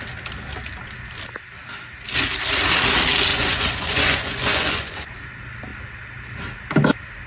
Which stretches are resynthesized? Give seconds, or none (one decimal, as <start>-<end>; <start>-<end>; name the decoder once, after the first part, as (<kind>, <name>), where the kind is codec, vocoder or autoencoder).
3.3-5.1 (vocoder, Vocos)